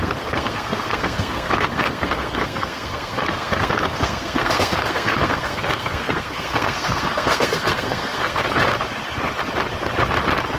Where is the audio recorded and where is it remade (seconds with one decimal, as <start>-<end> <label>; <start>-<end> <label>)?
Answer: 0.0-8.4 remade; 8.4-10.6 recorded